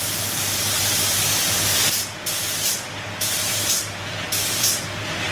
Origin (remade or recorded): recorded